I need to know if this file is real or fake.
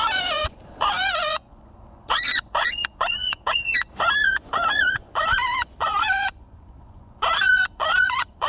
fake